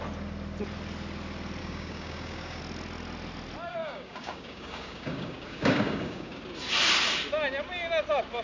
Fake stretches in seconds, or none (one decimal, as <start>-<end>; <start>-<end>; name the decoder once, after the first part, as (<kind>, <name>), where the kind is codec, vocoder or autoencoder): 1.6-2.6 (codec, DAC); 3.8-6.4